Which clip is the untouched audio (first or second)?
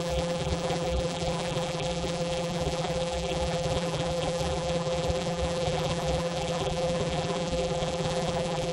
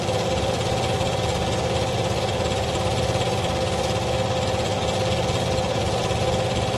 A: second